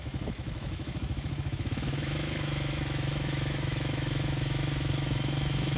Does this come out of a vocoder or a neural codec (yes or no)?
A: yes